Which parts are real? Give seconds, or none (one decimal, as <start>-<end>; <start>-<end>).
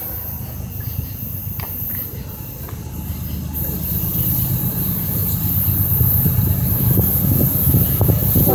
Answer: 1.4-4.7; 5.2-6.7